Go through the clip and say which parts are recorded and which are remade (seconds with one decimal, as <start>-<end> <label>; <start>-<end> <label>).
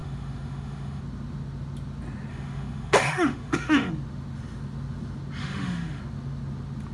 0.0-1.0 remade; 1.0-2.3 recorded; 2.3-3.9 remade; 3.9-5.4 recorded; 5.4-6.0 remade; 6.0-6.9 recorded